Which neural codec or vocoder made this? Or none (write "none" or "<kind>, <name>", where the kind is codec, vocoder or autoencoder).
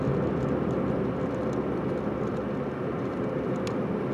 none